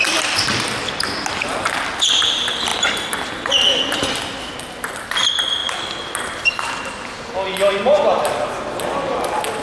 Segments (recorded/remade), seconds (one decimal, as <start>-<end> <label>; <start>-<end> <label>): 0.0-9.6 recorded